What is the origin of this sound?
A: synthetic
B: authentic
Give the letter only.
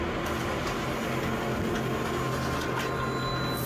B